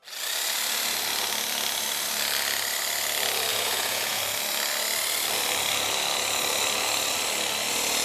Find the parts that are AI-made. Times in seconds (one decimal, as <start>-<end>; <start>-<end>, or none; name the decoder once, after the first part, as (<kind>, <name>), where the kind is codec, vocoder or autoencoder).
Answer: 3.5-4.2 (vocoder, Vocos)